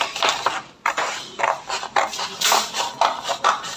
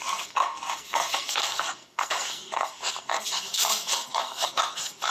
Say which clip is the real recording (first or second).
first